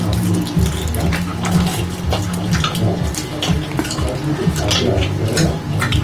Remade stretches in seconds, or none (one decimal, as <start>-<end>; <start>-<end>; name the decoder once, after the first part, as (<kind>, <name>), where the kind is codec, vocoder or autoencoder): none